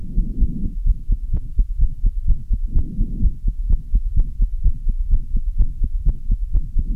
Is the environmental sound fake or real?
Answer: fake